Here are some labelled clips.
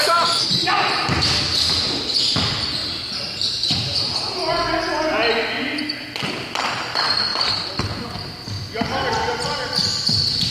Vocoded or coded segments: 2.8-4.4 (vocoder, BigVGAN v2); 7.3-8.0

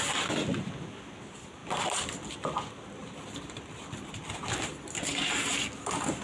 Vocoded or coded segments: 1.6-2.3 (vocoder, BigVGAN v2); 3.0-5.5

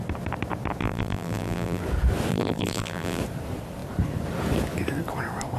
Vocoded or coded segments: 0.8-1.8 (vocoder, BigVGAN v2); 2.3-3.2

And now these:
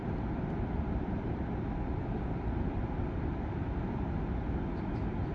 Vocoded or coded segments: 0.0-1.4 (vocoder, BigVGAN v2)